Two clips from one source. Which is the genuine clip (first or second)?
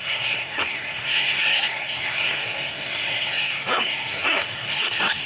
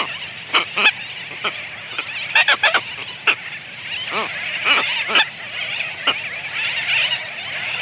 second